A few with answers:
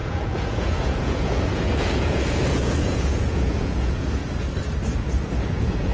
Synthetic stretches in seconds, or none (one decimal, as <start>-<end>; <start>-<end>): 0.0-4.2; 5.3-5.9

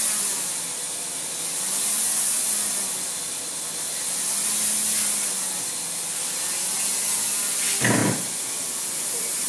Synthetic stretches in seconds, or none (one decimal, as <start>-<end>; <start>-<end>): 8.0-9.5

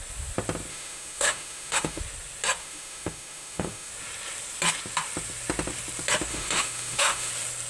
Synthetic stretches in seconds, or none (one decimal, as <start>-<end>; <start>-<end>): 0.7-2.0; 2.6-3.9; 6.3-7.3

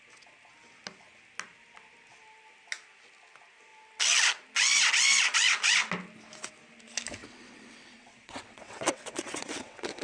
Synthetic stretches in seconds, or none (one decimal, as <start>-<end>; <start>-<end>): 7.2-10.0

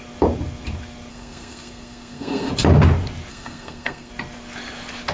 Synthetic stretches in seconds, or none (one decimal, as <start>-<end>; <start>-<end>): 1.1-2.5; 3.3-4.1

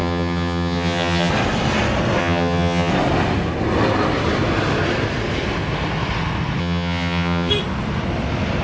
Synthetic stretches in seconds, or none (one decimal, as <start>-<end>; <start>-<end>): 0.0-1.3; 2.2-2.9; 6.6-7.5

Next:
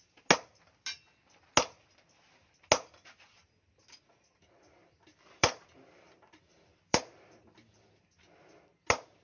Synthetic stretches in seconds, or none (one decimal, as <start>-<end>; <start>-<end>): 4.8-7.9